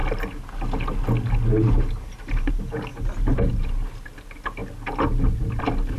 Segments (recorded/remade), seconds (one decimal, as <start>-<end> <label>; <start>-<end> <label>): 0.0-6.0 recorded